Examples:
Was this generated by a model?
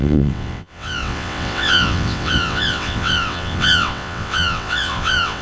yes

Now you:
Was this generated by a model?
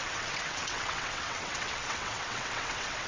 yes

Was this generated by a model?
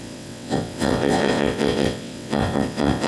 yes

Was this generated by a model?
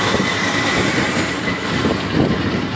no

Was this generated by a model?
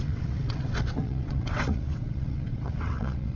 yes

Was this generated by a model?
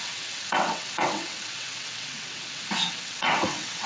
yes